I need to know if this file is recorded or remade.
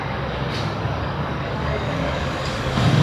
remade